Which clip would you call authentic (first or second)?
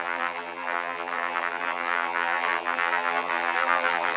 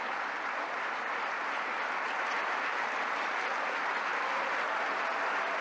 second